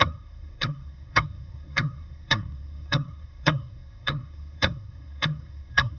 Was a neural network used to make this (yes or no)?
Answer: yes